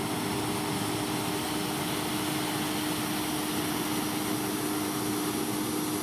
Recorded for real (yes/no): yes